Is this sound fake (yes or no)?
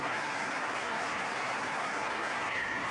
yes